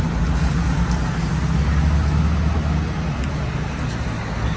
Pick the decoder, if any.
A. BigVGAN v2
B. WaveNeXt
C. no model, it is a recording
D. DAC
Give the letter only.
C